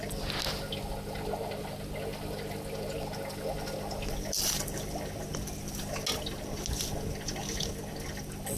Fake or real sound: real